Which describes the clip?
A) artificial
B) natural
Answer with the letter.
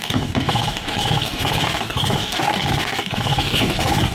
A